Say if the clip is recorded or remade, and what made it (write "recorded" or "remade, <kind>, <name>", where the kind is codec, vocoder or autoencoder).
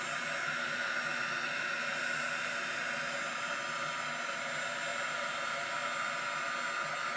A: recorded